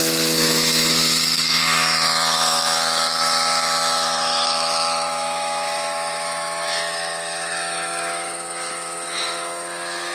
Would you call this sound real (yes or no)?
no